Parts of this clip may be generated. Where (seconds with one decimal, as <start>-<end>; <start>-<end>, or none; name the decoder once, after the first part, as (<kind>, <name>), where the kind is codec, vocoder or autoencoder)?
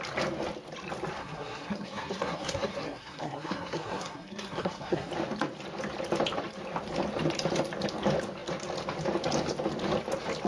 1.2-5.1 (codec, SNAC)